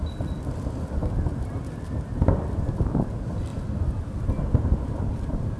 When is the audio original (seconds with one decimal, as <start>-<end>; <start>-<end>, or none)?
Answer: 0.0-5.6